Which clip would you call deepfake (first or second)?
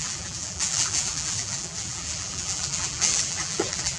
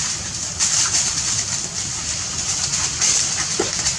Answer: first